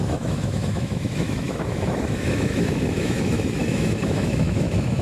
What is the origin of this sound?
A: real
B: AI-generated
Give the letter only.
B